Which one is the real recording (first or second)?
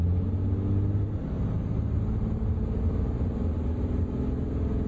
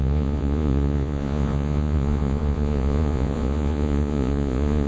first